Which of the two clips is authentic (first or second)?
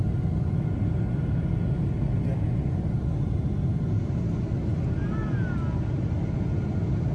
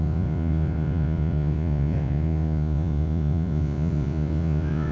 first